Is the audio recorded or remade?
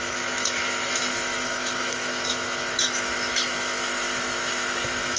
remade